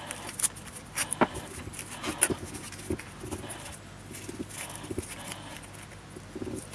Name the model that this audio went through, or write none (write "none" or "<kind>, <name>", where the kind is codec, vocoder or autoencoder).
none